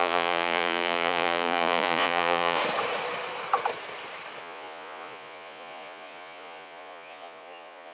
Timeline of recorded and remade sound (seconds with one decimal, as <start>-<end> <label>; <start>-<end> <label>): 0.0-2.6 remade; 2.6-4.4 recorded; 4.4-7.9 remade